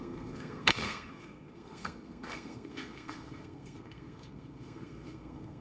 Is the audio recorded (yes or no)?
no